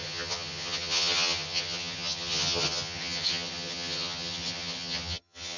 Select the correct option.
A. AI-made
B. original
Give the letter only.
A